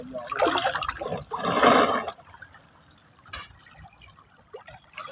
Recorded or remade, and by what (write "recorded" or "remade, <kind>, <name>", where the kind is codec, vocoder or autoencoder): recorded